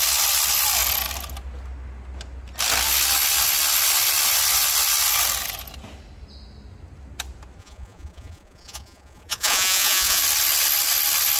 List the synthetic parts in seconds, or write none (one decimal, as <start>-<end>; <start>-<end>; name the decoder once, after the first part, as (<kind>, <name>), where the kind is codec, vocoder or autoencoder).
7.6-10.2 (vocoder, Vocos)